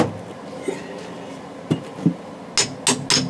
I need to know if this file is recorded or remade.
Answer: recorded